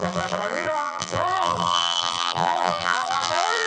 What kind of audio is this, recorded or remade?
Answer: remade